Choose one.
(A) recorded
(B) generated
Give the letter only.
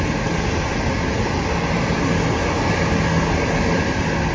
A